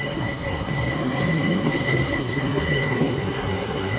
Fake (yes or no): yes